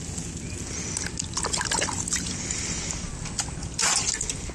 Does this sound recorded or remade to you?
recorded